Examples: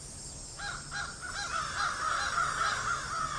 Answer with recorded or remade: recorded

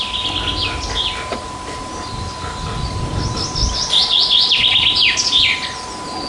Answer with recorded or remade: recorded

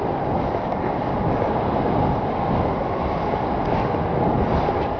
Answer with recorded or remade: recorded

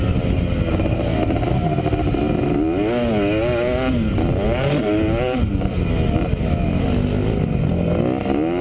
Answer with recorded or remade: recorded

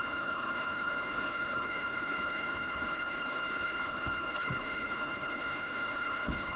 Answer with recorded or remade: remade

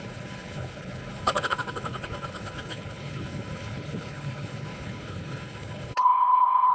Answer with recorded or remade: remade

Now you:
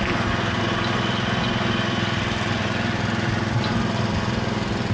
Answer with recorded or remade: recorded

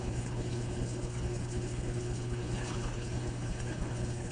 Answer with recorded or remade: remade